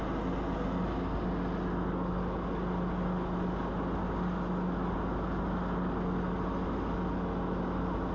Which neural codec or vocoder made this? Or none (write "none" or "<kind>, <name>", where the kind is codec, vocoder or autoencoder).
none